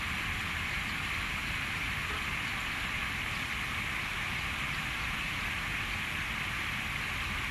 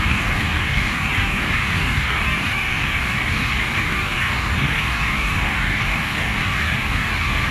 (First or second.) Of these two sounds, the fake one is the second